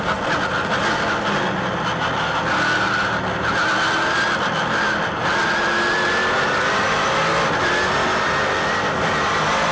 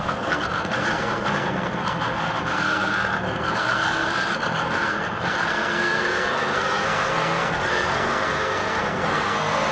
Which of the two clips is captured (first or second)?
first